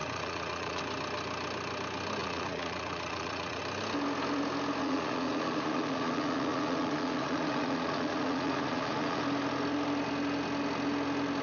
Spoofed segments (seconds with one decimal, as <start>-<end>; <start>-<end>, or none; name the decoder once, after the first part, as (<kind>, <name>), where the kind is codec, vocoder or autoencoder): 0.0-0.8 (vocoder, Vocos); 2.2-3.6; 4.8-9.2